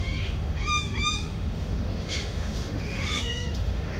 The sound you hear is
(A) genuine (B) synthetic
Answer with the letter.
B